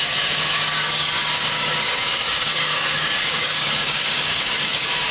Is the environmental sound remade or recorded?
remade